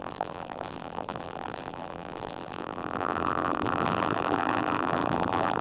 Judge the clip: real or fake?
fake